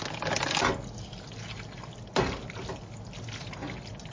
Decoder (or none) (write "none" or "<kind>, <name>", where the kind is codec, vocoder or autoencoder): none